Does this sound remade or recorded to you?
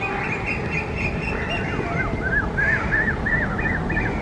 recorded